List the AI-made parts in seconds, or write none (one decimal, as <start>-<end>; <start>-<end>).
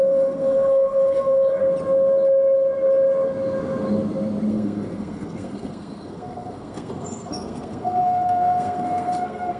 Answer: 0.0-1.6; 4.5-9.6